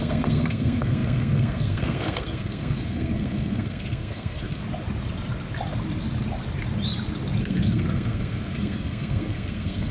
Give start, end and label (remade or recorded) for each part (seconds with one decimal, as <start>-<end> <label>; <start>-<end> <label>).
0.0-4.6 remade; 4.6-7.4 recorded; 7.4-9.9 remade